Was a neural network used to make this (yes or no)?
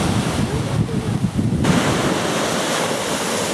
no